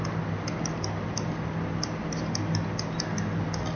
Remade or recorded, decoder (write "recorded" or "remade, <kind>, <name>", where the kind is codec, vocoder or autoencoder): recorded